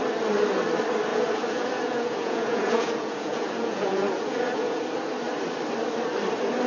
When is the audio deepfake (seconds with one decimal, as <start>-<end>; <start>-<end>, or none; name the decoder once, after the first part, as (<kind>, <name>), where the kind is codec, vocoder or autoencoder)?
1.1-4.8 (vocoder, Vocos)